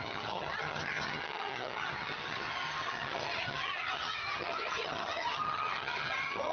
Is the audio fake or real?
fake